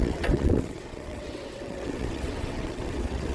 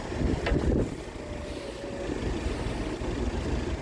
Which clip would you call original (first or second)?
second